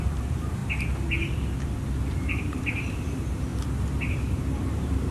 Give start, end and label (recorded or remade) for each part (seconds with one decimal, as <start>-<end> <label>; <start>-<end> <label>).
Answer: 0.0-0.6 remade; 0.6-2.4 recorded; 2.4-3.5 remade; 3.5-4.1 recorded; 4.1-5.1 remade